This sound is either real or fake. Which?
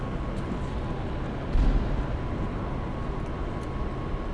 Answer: real